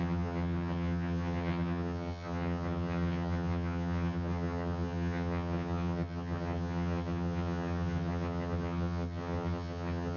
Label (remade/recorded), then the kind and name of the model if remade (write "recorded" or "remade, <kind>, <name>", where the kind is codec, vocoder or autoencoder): remade, vocoder, HiFi-GAN